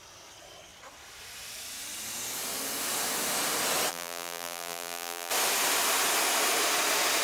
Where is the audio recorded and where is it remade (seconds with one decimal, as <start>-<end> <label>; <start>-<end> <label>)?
0.0-3.9 recorded; 3.9-5.3 remade; 5.3-7.2 recorded